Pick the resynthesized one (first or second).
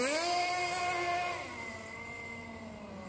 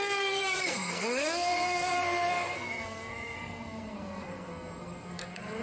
second